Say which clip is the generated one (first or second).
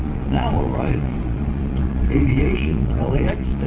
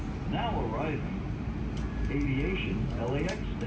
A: first